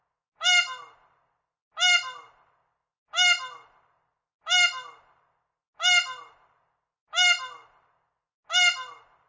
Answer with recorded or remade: recorded